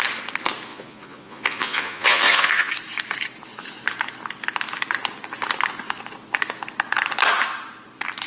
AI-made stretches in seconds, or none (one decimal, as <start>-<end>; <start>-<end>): 0.7-2.7